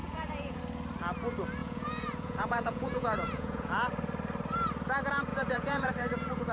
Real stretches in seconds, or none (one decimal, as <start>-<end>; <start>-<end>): 0.6-1.6; 3.7-5.3; 5.9-6.5

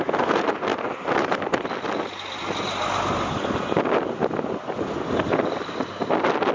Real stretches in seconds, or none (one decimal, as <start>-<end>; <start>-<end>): 0.0-6.5

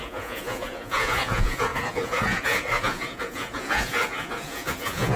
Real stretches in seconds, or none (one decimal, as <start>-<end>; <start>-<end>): none

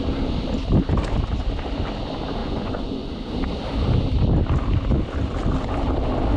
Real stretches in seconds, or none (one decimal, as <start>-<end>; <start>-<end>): 0.0-2.4; 3.1-6.4

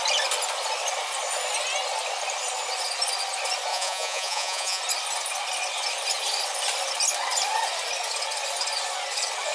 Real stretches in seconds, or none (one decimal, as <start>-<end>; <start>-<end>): 0.0-3.7; 4.8-9.5

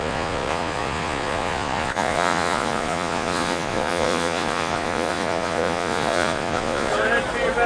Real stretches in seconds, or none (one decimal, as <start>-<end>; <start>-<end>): 6.9-7.7